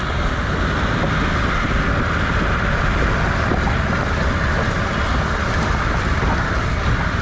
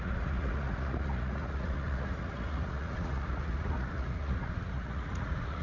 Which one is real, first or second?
first